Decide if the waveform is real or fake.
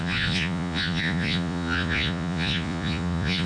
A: fake